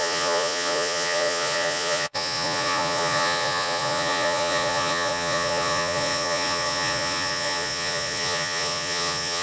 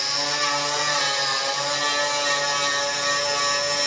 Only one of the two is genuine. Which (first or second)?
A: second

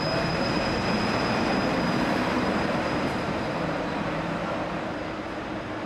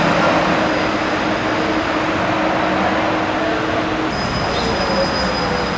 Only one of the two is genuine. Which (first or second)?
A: second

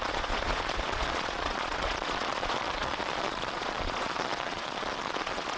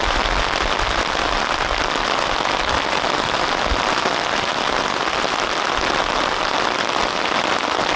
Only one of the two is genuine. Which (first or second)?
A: second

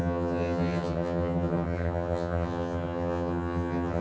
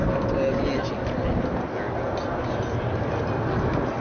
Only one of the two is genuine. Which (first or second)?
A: second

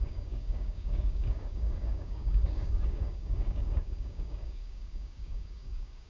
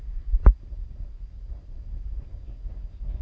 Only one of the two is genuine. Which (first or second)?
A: second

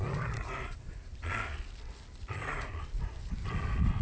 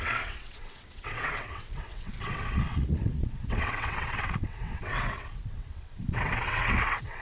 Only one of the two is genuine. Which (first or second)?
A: first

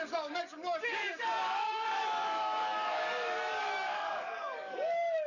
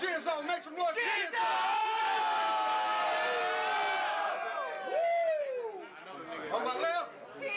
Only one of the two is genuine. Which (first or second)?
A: second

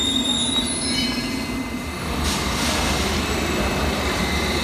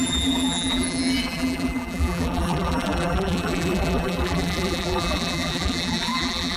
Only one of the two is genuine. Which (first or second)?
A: first